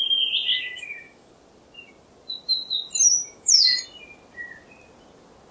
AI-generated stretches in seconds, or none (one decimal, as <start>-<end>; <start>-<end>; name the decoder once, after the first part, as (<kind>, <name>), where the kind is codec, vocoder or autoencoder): 0.5-1.3 (autoencoder, DAC-VAE); 3.2-3.8